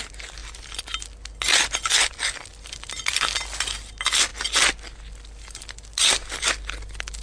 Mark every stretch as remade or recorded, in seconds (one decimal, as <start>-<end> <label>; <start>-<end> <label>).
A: 0.0-7.2 recorded